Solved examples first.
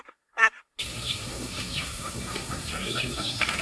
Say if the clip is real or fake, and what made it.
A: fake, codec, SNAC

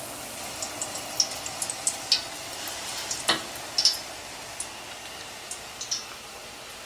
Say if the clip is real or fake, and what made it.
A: real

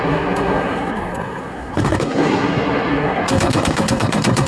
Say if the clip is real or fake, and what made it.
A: fake, codec, SNAC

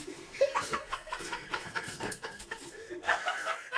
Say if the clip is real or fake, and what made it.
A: fake, codec, SNAC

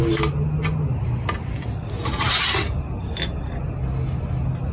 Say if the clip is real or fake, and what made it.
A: real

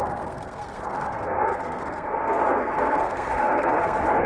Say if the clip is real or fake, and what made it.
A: fake, codec, SNAC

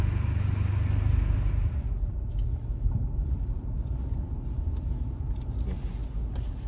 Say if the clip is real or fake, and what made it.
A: real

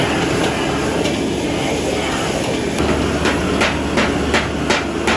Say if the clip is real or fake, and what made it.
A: real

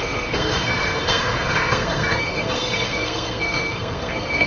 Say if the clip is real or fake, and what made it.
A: fake, codec, SNAC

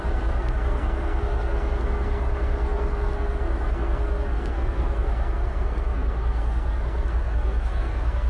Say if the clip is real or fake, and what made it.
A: fake, codec, SNAC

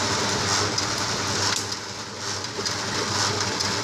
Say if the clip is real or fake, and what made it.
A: real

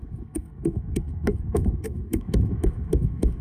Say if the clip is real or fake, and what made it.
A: fake, codec, SNAC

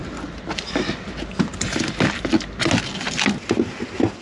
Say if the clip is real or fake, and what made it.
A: real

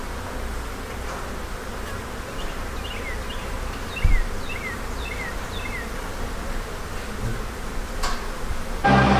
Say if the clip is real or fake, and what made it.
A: real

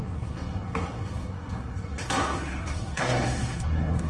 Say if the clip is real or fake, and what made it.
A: fake, codec, SNAC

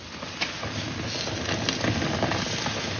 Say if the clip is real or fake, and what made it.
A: real